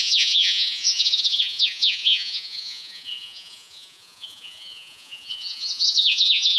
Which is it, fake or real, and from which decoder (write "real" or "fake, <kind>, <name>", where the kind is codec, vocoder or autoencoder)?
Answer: fake, vocoder, Vocos